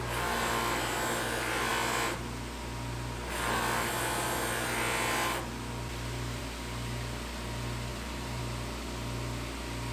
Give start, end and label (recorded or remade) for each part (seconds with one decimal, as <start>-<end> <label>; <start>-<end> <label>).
0.0-7.9 recorded; 7.9-8.4 remade; 8.4-9.9 recorded